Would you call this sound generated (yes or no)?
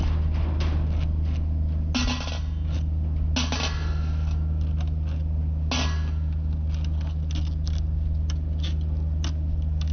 no